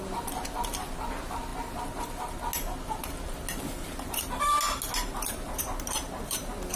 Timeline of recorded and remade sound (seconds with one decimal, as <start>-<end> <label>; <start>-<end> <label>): 0.0-6.8 recorded